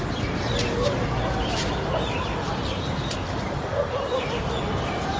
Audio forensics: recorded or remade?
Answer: recorded